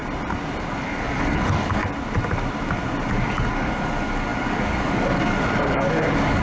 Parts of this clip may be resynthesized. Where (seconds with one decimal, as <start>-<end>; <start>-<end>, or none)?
0.6-1.8; 3.5-6.4